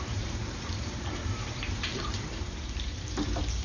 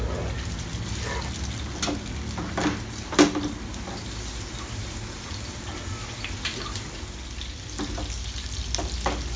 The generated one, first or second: first